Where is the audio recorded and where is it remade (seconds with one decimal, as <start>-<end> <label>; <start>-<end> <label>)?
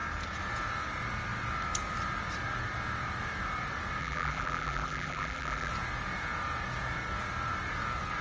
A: 0.0-4.0 recorded; 4.0-5.7 remade; 5.7-8.2 recorded